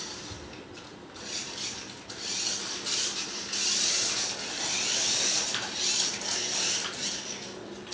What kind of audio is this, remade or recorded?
recorded